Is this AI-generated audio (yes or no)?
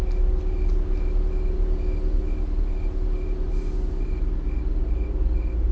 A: no